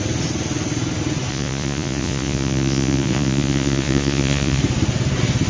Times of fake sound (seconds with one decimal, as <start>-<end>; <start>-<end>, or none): 1.3-4.6